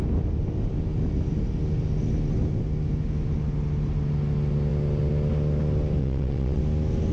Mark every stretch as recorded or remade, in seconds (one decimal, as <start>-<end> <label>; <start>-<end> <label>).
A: 0.0-6.0 recorded; 6.0-6.6 remade; 6.6-7.1 recorded